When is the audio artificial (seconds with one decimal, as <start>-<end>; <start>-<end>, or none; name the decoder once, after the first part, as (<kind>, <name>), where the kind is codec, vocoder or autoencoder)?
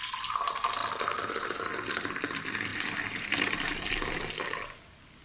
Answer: 2.7-4.2 (vocoder, BigVGAN v2)